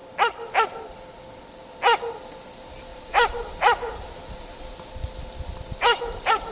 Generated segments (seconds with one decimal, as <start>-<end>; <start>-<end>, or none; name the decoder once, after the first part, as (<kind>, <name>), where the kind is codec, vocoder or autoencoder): 2.9-4.7 (vocoder, BigVGAN v2)